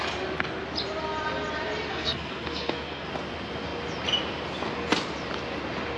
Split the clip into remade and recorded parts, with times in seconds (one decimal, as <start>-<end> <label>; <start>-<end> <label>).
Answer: 0.0-1.9 recorded; 1.9-3.1 remade; 3.1-6.0 recorded